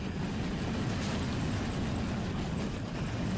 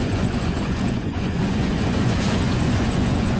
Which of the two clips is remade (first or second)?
second